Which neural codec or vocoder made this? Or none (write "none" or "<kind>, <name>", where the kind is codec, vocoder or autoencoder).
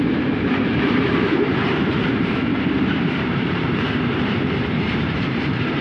vocoder, BigVGAN v2